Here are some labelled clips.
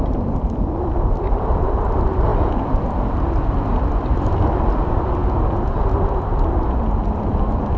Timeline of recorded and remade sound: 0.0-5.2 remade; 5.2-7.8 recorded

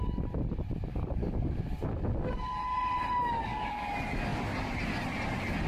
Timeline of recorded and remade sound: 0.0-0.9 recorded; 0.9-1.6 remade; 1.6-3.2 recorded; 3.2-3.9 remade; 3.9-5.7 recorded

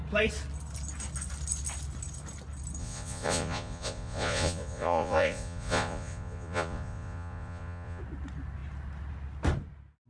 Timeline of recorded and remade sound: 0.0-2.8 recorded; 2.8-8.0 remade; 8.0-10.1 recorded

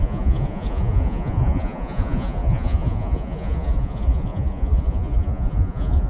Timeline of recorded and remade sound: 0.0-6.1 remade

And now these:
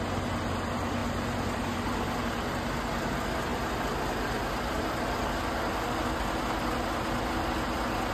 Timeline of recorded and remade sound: 0.0-8.1 recorded

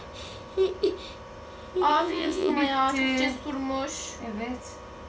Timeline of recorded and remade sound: 0.0-1.9 recorded; 1.9-2.5 remade; 2.5-5.1 recorded

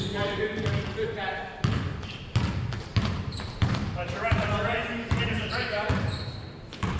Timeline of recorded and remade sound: 0.0-0.5 remade; 0.5-1.0 recorded; 1.0-1.5 remade; 1.5-3.0 recorded; 3.0-7.0 remade

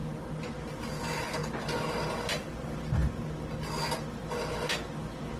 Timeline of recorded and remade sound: 0.0-5.4 recorded